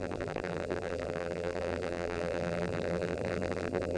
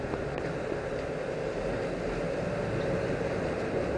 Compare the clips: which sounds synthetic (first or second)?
first